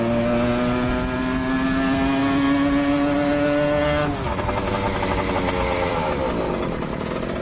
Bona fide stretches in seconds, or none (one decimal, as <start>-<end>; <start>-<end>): 0.0-7.4